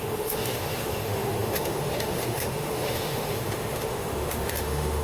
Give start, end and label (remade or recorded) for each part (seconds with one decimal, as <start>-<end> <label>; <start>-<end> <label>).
0.0-5.0 remade